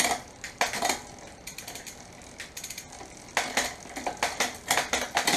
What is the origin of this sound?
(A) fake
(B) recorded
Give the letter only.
B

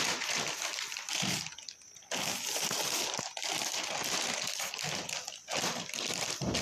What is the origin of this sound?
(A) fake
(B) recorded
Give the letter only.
B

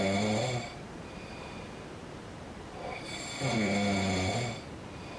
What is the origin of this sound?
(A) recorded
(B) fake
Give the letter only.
A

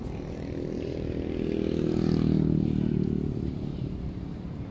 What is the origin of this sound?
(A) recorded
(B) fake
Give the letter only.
A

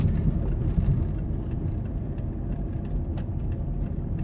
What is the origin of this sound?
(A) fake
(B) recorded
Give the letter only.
B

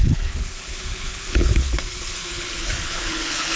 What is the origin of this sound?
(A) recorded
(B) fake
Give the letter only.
B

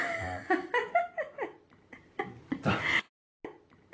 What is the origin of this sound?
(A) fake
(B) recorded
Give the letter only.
B